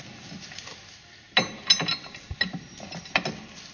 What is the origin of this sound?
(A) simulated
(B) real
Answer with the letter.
B